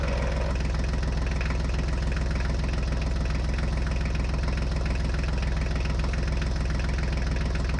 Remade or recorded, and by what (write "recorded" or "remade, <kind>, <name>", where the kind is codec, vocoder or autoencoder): recorded